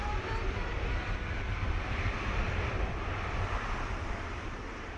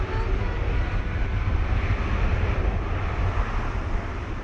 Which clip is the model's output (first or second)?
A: first